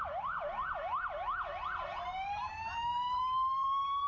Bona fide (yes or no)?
no